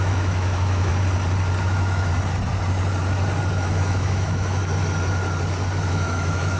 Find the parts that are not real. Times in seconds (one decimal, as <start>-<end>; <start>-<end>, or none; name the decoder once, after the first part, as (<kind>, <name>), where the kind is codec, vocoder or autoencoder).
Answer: 0.0-0.9 (autoencoder, DAC-VAE); 1.6-2.1; 3.5-4.6; 5.9-6.6